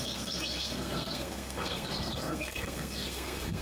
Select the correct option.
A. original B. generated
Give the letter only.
B